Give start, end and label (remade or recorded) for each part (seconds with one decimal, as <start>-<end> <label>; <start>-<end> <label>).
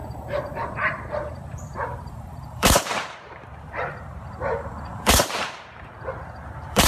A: 0.0-1.3 recorded; 1.3-6.9 remade